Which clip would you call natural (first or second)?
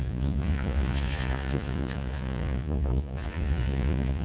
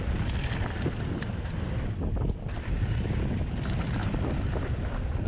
second